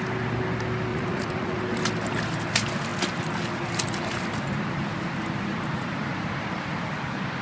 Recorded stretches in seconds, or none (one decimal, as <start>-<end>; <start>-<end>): 0.0-0.9; 1.6-7.4